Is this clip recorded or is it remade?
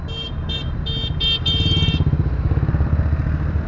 recorded